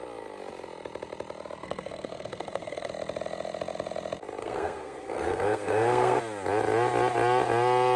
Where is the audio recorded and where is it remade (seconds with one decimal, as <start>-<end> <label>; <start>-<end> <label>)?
0.0-1.6 recorded; 1.6-2.9 remade; 2.9-4.4 recorded; 4.4-6.2 remade; 6.2-8.0 recorded